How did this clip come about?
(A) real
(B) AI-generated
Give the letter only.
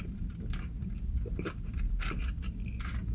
A